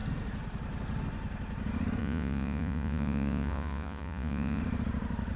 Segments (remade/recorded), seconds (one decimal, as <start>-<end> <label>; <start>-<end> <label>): 0.0-2.0 recorded; 2.0-4.6 remade; 4.6-5.4 recorded